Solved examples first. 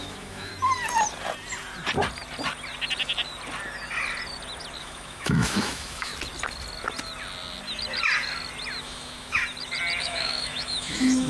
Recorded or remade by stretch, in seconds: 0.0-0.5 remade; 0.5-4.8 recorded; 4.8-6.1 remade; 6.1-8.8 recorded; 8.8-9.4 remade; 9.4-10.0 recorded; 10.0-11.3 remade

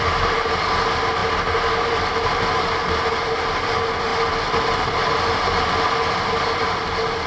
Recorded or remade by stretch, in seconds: 0.0-7.3 recorded

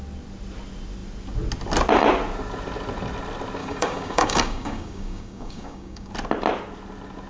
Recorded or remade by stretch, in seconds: 0.0-3.6 recorded; 3.6-6.1 remade; 6.1-7.3 recorded